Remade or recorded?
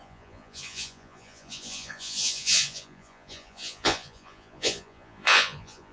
remade